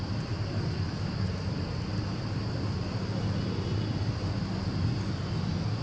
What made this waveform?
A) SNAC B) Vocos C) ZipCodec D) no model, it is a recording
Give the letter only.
D